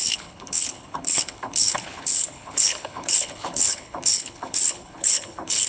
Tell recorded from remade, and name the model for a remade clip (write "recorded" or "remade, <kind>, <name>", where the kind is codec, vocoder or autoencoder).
remade, codec, HILCodec